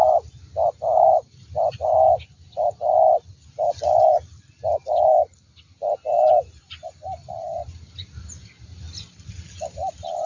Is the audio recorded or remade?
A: recorded